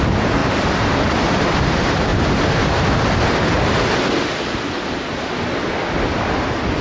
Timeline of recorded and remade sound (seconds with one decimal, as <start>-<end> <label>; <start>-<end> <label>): 0.0-2.1 recorded; 2.1-6.2 remade; 6.2-6.8 recorded